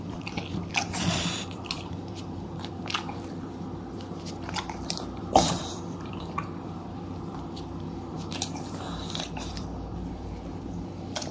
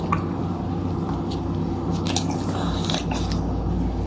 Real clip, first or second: second